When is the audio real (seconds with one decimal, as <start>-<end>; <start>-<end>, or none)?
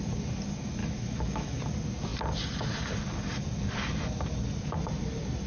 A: 0.0-0.8; 1.6-5.5